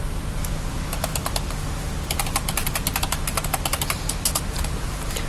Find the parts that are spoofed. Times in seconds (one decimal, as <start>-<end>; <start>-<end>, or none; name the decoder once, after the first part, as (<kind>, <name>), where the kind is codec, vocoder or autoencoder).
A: none